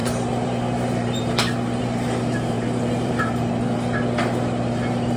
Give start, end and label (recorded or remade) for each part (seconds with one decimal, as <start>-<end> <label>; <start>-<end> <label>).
0.0-1.2 remade; 1.2-1.8 recorded; 1.8-3.5 remade; 3.5-5.2 recorded